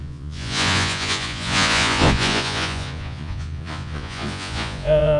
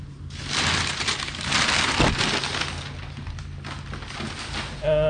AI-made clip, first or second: first